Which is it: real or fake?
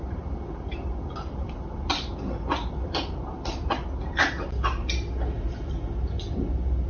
real